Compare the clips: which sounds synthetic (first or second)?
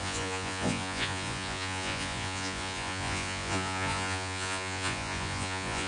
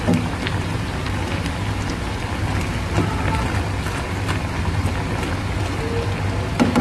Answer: first